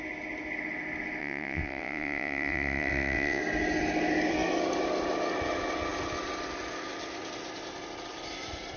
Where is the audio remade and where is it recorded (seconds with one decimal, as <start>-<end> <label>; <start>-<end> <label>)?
0.0-1.2 recorded; 1.2-3.4 remade; 3.4-8.8 recorded

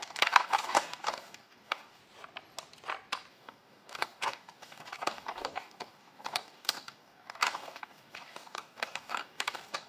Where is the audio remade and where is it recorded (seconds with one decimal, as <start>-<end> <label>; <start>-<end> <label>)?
0.0-2.0 remade; 2.0-3.3 recorded; 3.3-9.9 remade

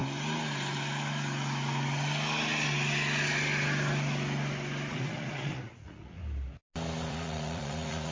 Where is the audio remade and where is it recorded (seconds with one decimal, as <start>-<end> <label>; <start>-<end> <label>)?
0.0-4.9 recorded; 4.9-6.2 remade; 6.2-7.1 recorded; 7.1-8.1 remade

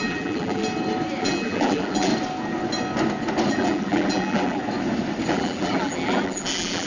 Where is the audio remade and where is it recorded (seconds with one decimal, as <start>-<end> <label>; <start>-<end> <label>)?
0.0-0.6 remade; 0.6-1.2 recorded; 1.2-2.1 remade; 2.1-3.5 recorded; 3.5-4.6 remade; 4.6-5.3 recorded; 5.3-6.9 remade